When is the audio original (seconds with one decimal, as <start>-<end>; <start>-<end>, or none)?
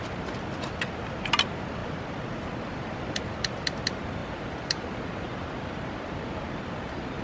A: 0.0-4.2; 5.0-7.2